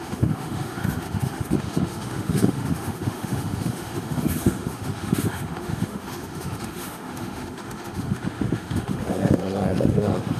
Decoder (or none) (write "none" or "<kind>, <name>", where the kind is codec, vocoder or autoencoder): autoencoder, DAC-VAE